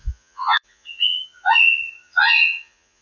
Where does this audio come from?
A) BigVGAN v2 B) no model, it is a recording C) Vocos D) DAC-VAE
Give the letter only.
C